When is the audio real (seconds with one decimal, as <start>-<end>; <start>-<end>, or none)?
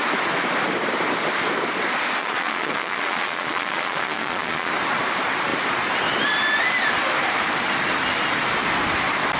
0.0-2.2; 4.7-9.4